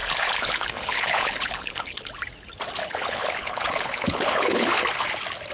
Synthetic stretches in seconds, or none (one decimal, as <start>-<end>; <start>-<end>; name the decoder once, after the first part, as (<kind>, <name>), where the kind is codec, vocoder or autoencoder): 0.0-2.1 (codec, HILCodec); 2.8-4.8